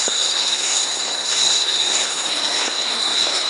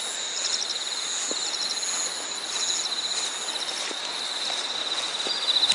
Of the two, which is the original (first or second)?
second